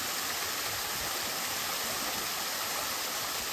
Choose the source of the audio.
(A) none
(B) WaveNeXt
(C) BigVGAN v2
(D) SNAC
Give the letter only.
A